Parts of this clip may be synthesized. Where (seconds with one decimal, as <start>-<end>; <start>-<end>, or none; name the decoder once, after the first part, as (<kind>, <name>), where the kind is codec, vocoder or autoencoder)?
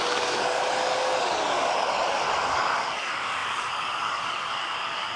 0.0-5.2 (codec, DAC)